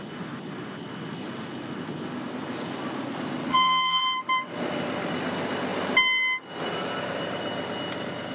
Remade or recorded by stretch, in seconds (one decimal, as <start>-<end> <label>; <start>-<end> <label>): 0.0-3.5 recorded; 3.5-4.0 remade; 4.0-8.3 recorded